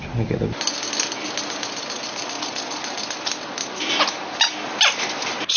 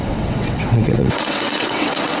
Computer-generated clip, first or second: second